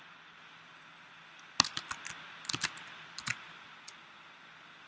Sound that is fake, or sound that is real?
real